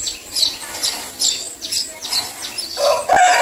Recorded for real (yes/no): no